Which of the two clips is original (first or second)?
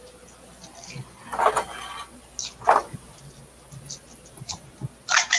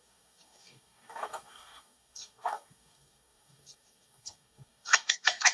first